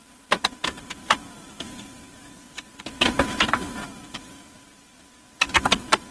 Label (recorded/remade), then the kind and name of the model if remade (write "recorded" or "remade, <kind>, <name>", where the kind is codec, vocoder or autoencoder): recorded